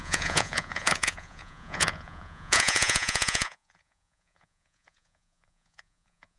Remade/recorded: remade